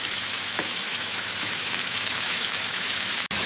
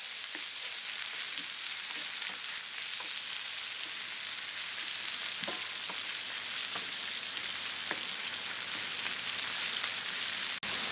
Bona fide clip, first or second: second